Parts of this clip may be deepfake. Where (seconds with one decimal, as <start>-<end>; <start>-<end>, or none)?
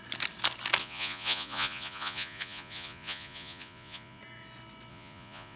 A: 0.8-4.2; 4.9-5.6